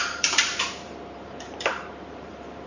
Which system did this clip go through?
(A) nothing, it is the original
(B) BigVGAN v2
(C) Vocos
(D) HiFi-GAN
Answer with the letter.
B